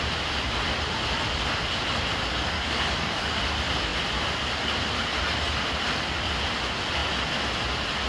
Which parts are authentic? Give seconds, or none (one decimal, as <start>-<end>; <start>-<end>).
0.0-2.3; 3.4-8.1